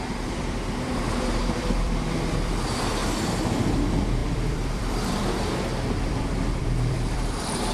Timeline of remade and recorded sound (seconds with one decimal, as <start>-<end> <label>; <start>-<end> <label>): 0.0-3.0 remade; 3.0-3.7 recorded; 3.7-7.7 remade